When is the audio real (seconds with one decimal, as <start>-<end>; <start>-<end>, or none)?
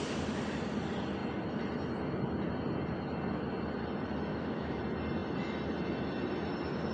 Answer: 0.0-4.3; 4.8-6.9